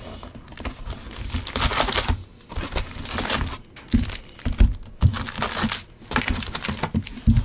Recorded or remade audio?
recorded